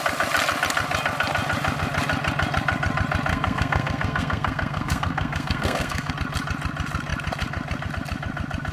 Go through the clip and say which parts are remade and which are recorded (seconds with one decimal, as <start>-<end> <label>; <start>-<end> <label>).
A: 0.0-3.3 recorded; 3.3-6.1 remade; 6.1-8.7 recorded